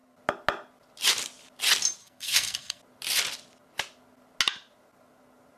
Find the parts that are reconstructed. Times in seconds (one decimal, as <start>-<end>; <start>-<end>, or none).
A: 2.0-2.8